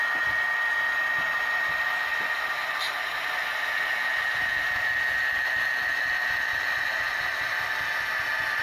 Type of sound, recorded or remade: recorded